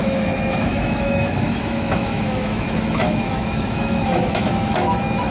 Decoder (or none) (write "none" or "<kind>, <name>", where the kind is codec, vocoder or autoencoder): autoencoder, DAC-VAE